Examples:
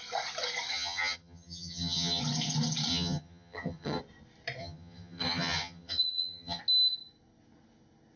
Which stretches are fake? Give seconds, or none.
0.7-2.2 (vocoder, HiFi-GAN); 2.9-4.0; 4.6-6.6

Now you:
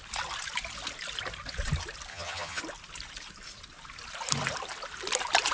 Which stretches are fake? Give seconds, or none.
2.1-2.6 (vocoder, HiFi-GAN)

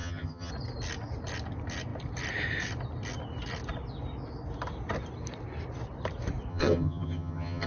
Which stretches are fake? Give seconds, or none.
0.0-0.5 (vocoder, HiFi-GAN); 6.5-7.7

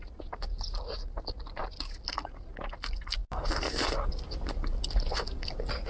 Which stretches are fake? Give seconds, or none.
none

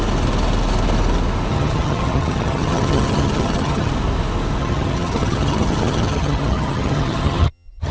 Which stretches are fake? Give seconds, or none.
1.5-3.9 (vocoder, HiFi-GAN); 4.6-7.9

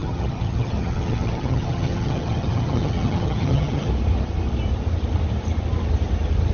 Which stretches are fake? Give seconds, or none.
0.0-3.9 (vocoder, HiFi-GAN)

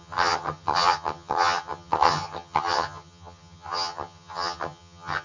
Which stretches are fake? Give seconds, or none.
0.0-5.2 (vocoder, HiFi-GAN)